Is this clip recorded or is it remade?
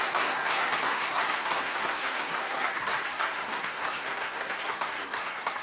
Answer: remade